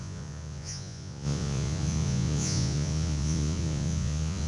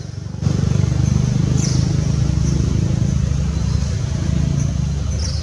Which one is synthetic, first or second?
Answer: first